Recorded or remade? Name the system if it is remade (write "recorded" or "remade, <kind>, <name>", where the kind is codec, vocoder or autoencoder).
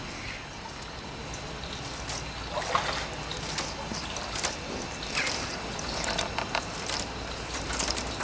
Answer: recorded